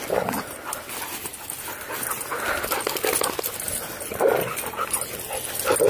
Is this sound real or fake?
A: real